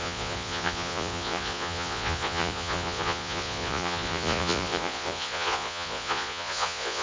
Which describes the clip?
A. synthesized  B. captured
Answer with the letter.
A